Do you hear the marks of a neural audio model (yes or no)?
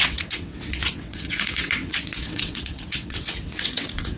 yes